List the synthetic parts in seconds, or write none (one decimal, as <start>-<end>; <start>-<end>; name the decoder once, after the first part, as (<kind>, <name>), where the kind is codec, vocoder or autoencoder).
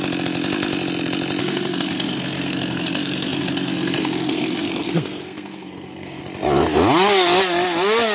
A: 1.4-6.2 (codec, SNAC)